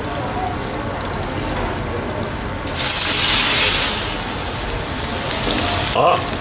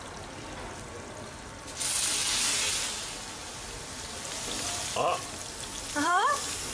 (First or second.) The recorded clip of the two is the first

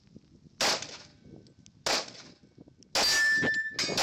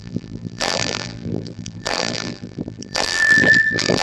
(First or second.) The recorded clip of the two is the first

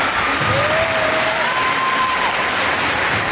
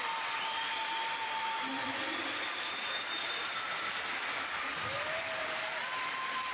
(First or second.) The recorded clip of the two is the first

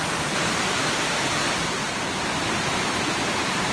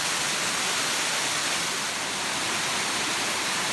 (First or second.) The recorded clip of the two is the second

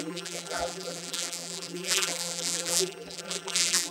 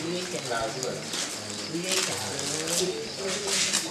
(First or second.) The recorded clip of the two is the second